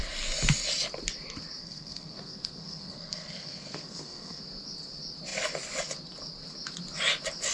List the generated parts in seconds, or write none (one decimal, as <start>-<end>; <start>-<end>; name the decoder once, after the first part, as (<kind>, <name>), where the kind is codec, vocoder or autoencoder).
1.6-4.4 (codec, SNAC)